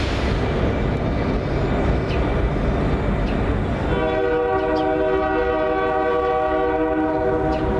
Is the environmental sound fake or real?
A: real